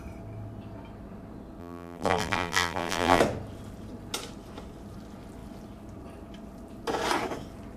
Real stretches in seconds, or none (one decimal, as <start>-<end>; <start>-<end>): 0.0-1.6; 3.2-7.8